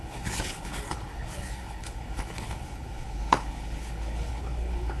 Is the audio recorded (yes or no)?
no